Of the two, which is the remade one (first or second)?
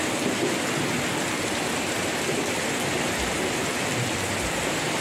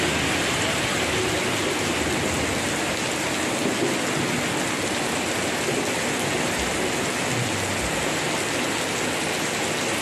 first